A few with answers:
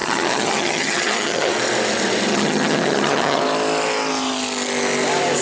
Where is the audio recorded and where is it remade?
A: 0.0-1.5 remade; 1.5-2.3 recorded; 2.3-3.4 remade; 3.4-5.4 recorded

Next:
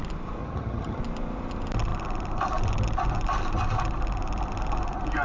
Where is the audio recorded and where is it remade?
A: 0.0-0.4 recorded; 0.4-1.0 remade; 1.0-5.2 recorded

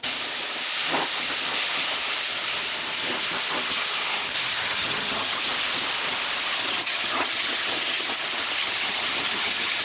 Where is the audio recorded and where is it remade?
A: 0.0-4.5 recorded; 4.5-5.4 remade; 5.4-6.5 recorded; 6.5-9.8 remade

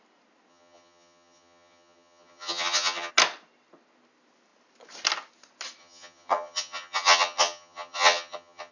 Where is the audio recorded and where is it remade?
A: 0.0-0.5 recorded; 0.5-3.1 remade; 3.1-5.8 recorded; 5.8-8.7 remade

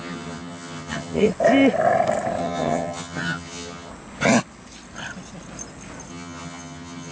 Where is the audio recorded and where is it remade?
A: 0.0-1.3 remade; 1.3-2.4 recorded; 2.4-3.9 remade; 3.9-6.1 recorded; 6.1-7.1 remade